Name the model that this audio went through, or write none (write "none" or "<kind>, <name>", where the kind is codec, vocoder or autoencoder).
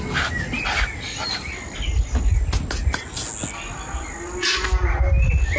none